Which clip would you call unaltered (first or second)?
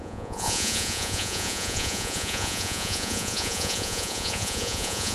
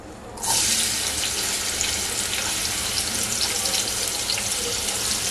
second